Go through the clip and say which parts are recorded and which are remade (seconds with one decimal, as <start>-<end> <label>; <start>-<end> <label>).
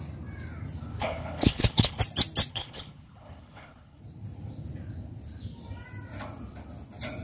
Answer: 0.0-1.0 recorded; 1.0-2.0 remade; 2.0-2.5 recorded; 2.5-4.0 remade; 4.0-7.2 recorded